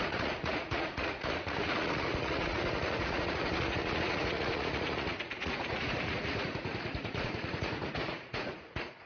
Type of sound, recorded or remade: remade